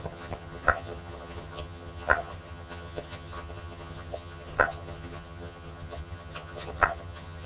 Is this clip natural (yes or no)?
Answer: no